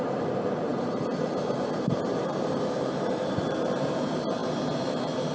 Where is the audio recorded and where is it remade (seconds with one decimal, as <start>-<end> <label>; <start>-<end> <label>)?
0.0-5.3 remade